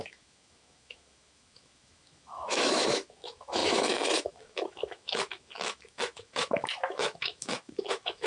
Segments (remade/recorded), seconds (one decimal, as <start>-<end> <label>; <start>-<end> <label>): 0.0-8.3 remade